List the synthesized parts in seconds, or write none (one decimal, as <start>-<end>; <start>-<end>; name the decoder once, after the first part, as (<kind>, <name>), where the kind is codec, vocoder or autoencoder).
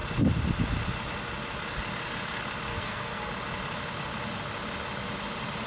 2.7-3.3 (codec, SNAC)